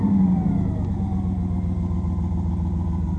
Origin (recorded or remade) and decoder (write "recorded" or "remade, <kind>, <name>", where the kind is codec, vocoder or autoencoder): recorded